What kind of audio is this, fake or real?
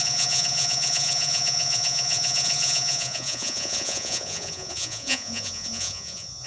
fake